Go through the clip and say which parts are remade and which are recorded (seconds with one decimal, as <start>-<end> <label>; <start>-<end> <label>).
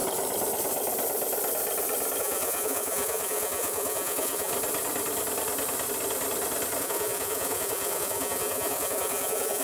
0.0-2.2 recorded; 2.2-4.5 remade; 4.5-6.8 recorded; 6.8-9.6 remade